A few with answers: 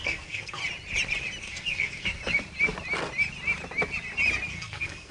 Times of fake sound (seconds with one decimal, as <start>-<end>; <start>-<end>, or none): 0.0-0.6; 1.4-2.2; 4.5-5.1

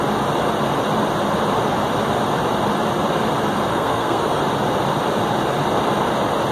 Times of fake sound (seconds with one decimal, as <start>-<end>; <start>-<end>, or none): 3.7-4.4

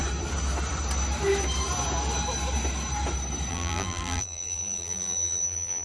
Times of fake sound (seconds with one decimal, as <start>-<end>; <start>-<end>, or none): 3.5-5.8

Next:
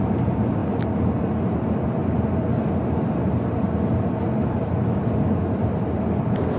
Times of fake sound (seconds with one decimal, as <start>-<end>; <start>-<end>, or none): 0.0-0.6; 1.5-2.0; 4.4-6.6

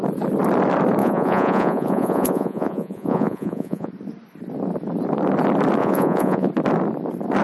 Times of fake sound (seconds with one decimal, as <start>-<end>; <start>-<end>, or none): 1.0-3.9; 5.8-6.5

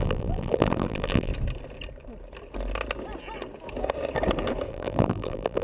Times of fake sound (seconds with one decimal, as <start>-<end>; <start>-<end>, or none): 0.0-1.3; 4.7-5.6